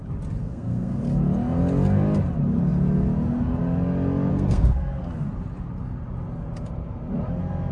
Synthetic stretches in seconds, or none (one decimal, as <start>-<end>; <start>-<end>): 0.4-1.0; 4.3-5.0